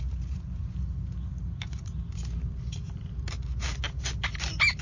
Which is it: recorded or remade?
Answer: recorded